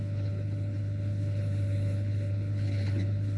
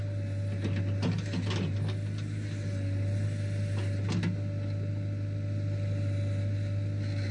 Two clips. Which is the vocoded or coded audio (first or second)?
first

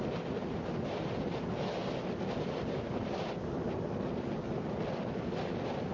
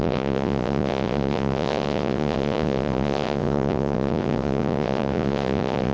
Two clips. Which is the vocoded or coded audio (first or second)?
second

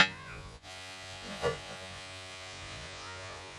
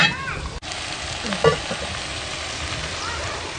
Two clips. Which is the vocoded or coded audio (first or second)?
first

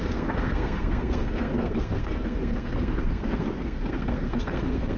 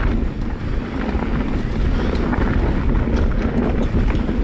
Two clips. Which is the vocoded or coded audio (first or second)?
first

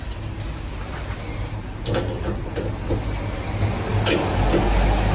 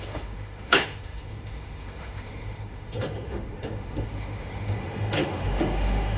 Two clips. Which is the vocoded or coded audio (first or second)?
second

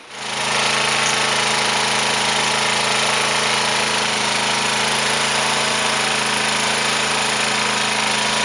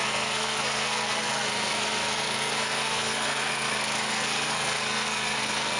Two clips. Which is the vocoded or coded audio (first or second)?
second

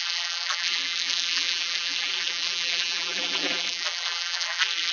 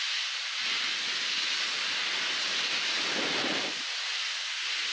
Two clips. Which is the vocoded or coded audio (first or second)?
first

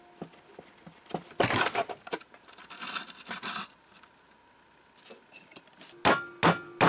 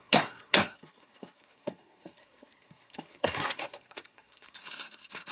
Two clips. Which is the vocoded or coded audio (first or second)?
second